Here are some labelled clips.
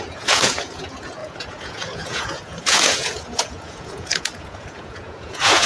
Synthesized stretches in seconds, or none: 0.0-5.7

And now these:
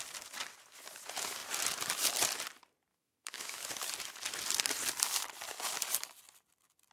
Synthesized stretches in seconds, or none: 2.9-3.7

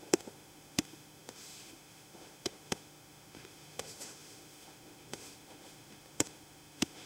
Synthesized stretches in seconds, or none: 0.0-7.1